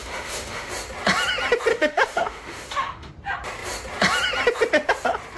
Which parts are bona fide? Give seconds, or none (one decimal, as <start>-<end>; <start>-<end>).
0.7-1.7; 3.1-5.4